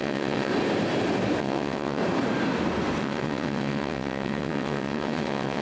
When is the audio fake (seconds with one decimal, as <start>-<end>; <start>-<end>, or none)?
0.0-0.5; 1.4-2.0; 3.0-5.6